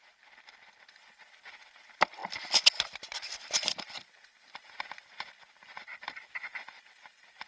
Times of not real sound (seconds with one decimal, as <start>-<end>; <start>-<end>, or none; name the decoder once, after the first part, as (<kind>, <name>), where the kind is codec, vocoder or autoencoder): none